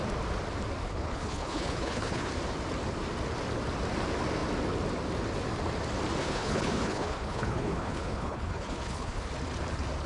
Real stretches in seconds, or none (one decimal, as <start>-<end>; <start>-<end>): 0.0-0.8; 2.3-6.2; 9.2-10.1